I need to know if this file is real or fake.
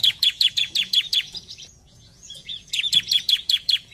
fake